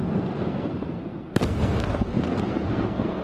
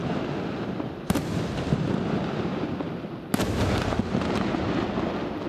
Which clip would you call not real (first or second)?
first